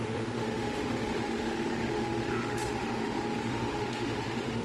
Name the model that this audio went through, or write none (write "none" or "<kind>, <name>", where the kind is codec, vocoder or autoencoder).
autoencoder, DAC-VAE